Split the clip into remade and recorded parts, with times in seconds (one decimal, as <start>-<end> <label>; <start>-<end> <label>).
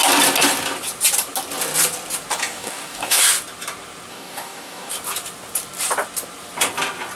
0.0-2.4 recorded; 2.4-3.2 remade; 3.2-4.1 recorded; 4.1-4.9 remade; 4.9-7.2 recorded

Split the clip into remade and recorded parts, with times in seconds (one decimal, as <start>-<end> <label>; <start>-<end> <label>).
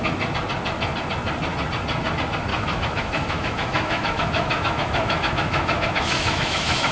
0.0-2.5 recorded; 2.5-6.9 remade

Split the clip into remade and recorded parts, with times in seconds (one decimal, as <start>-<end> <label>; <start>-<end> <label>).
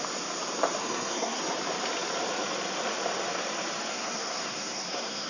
0.0-0.8 recorded; 0.8-1.4 remade; 1.4-3.9 recorded; 3.9-5.3 remade